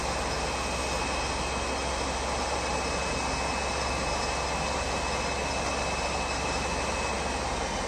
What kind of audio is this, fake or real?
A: real